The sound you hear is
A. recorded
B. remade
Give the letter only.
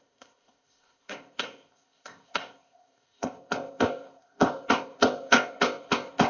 B